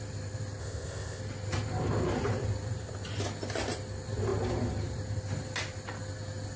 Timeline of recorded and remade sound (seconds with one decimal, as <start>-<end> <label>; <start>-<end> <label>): 0.0-0.6 recorded; 0.6-1.2 remade; 1.2-6.6 recorded